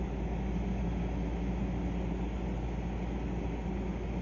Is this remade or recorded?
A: recorded